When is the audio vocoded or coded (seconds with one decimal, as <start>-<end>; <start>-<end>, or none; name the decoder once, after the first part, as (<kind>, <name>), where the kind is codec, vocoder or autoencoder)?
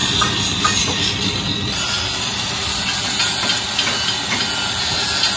none